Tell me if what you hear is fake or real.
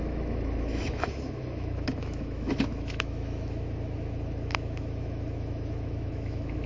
fake